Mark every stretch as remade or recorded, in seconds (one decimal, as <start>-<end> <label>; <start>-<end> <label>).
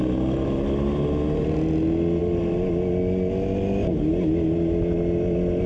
0.0-5.7 recorded